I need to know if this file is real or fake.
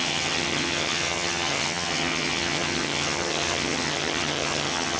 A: fake